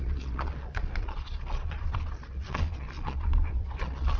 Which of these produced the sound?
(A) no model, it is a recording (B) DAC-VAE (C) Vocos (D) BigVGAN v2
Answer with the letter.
C